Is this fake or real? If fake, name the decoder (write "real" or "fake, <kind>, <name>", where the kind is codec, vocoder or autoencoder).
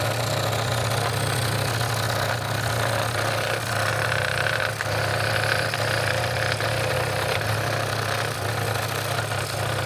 real